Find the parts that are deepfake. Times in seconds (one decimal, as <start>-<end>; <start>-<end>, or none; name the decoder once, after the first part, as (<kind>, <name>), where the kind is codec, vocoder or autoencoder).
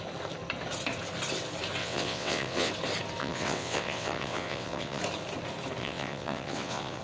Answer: 1.8-2.7 (vocoder, WaveNeXt); 3.2-5.0; 5.8-7.0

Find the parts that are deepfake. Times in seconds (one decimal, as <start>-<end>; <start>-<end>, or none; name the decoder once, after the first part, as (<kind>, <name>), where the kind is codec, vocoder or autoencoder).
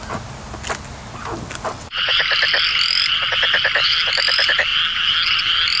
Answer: 1.7-2.2 (vocoder, WaveNeXt)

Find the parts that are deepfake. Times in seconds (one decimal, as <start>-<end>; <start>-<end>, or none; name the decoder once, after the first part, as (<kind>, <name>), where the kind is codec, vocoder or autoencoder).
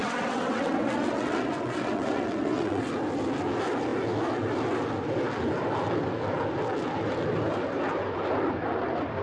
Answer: 0.0-2.9 (vocoder, WaveNeXt)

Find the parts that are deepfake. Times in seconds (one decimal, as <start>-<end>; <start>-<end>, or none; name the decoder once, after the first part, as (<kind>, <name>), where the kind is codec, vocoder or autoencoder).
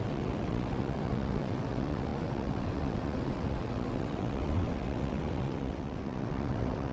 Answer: 0.0-6.9 (vocoder, WaveNeXt)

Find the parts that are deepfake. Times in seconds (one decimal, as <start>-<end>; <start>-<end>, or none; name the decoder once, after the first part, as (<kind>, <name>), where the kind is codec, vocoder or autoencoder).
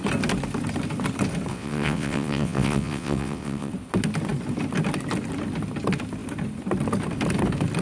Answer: 1.5-3.7 (vocoder, WaveNeXt)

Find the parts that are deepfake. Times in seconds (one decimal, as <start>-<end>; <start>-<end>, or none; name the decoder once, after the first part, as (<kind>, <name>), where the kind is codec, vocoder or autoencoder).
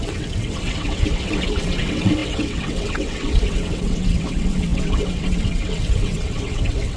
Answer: 0.0-7.0 (vocoder, WaveNeXt)